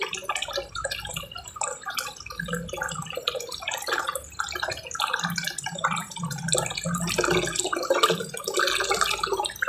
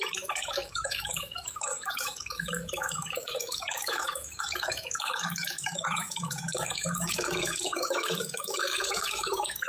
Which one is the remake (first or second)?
second